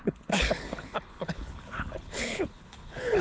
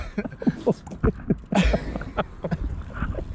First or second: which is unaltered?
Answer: second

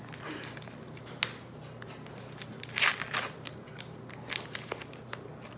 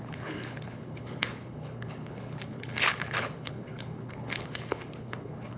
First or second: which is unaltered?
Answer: first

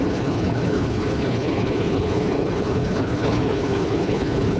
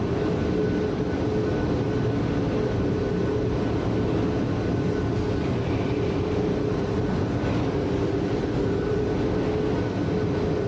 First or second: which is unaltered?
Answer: second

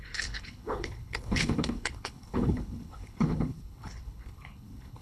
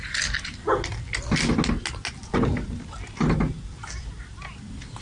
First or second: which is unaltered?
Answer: second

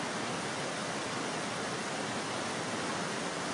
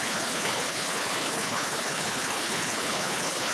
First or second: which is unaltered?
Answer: first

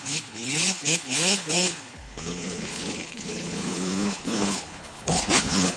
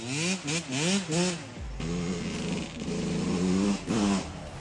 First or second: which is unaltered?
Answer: second